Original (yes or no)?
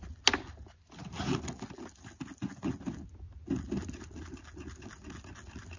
yes